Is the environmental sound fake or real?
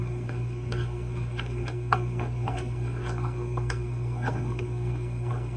fake